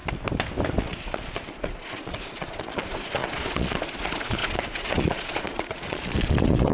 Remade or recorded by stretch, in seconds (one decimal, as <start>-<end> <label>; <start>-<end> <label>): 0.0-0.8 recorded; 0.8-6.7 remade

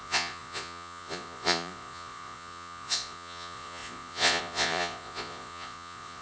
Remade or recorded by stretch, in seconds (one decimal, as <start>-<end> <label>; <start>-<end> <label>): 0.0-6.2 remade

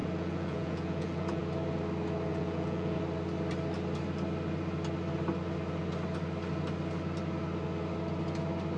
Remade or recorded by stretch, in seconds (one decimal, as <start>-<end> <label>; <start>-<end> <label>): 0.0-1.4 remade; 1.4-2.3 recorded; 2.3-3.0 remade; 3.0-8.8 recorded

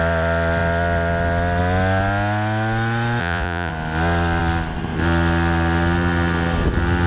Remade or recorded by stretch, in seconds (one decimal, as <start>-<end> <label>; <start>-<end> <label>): 0.0-3.2 recorded; 3.2-3.7 remade; 3.7-7.1 recorded

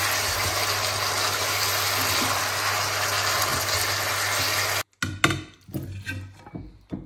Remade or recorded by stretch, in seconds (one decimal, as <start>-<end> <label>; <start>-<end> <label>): 0.0-7.1 recorded

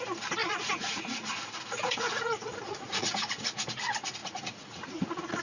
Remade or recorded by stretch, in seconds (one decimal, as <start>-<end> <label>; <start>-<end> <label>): 0.0-0.4 recorded; 0.4-3.6 remade; 3.6-4.2 recorded; 4.2-5.4 remade